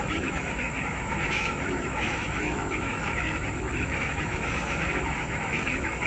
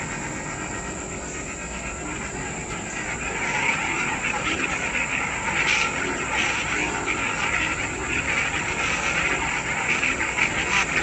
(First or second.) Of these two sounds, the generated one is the first